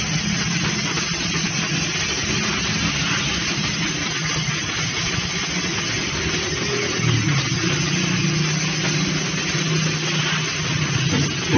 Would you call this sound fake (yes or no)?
no